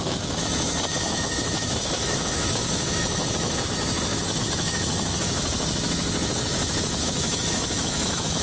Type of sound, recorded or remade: remade